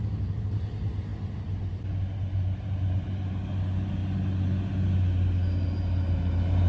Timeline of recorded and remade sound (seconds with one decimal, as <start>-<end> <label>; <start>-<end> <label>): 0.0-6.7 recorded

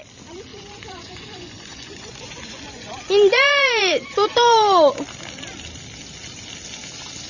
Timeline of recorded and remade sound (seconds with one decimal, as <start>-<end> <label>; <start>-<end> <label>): 0.0-0.5 recorded; 0.5-4.9 remade; 4.9-7.3 recorded

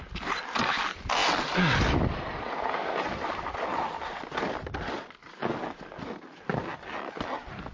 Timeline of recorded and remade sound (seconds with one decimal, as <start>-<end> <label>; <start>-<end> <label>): 0.0-7.7 recorded

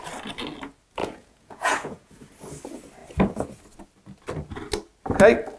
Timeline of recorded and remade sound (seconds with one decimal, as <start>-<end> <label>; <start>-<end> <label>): 0.0-1.0 recorded; 1.0-2.1 remade; 2.1-5.6 recorded

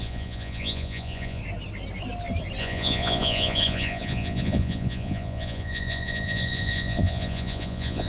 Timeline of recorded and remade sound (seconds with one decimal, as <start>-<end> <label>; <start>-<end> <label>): 0.0-1.4 remade; 1.4-2.6 recorded; 2.6-8.1 remade